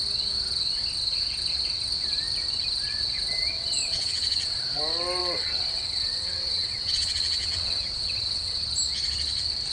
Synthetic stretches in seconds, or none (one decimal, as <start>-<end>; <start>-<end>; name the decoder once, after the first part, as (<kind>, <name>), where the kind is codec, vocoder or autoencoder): 3.5-4.8 (vocoder, WaveNeXt); 5.2-8.6